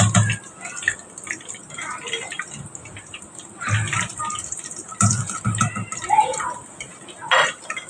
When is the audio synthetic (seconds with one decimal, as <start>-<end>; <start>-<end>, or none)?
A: 1.6-5.4